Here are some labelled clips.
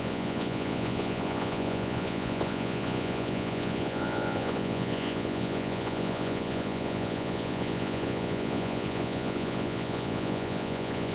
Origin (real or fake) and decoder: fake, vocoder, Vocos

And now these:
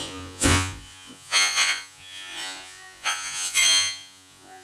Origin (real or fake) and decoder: fake, vocoder, Vocos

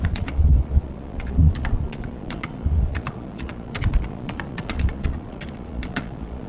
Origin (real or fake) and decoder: fake, vocoder, Vocos